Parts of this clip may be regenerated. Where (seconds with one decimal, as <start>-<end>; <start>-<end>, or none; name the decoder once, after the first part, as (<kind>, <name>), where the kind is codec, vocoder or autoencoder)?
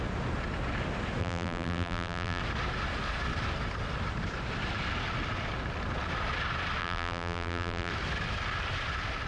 1.2-2.4 (vocoder, BigVGAN v2); 6.8-7.9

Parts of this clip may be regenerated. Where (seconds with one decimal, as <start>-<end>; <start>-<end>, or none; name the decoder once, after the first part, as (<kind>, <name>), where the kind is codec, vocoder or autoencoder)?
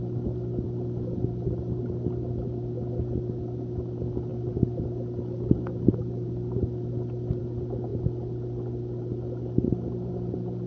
none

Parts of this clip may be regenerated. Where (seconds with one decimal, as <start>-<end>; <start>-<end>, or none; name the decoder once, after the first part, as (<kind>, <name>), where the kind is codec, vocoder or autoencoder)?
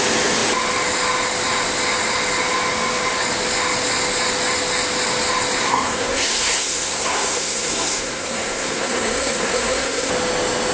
5.6-10.1 (codec, SNAC)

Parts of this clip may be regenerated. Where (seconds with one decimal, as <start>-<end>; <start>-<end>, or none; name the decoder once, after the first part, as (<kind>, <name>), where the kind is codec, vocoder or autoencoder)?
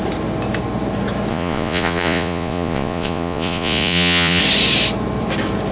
1.3-4.4 (vocoder, Vocos)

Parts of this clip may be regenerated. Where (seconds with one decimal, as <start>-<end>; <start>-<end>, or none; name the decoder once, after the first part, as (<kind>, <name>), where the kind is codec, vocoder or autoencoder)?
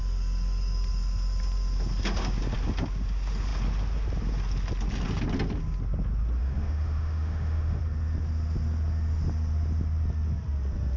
6.4-7.8 (autoencoder, DAC-VAE)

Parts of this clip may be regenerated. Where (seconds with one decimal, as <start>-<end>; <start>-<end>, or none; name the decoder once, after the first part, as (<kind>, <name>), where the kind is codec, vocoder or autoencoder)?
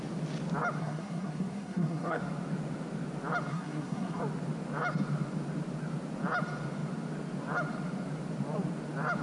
0.8-2.2 (codec, SNAC); 3.5-4.2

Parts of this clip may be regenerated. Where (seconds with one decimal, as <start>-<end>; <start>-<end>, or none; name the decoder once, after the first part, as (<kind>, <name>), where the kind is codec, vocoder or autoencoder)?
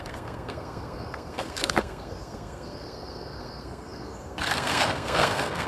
0.0-5.7 (codec, SNAC)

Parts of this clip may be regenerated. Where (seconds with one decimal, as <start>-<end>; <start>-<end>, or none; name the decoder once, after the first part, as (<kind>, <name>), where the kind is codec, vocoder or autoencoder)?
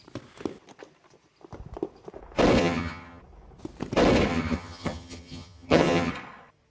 2.6-3.2 (vocoder, HiFi-GAN); 4.3-6.1